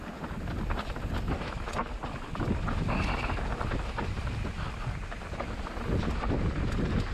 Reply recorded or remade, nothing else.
recorded